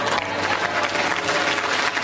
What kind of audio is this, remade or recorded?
recorded